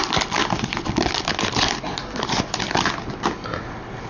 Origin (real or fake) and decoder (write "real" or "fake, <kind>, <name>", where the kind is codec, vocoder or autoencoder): real